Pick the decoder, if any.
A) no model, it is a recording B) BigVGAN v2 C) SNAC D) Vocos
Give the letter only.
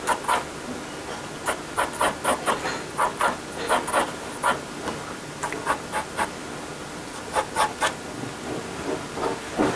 A